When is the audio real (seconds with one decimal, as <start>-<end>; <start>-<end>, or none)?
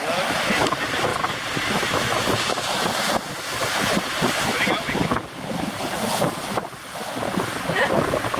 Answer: 0.0-8.4